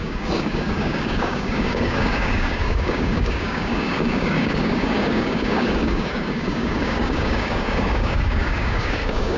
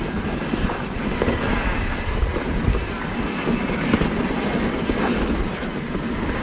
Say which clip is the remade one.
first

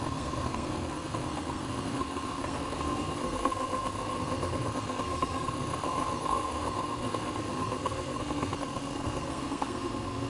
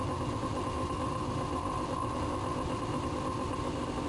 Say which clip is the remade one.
first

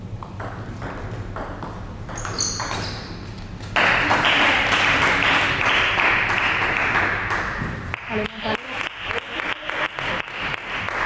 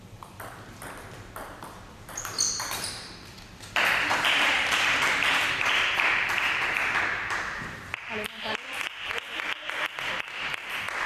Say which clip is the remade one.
second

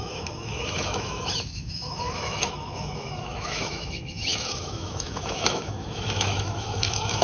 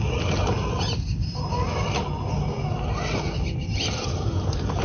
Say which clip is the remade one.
first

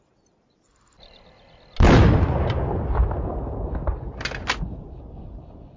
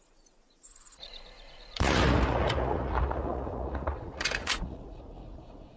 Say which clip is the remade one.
second